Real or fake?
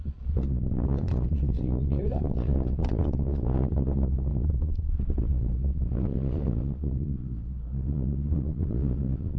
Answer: fake